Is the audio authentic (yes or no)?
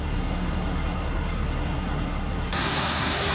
no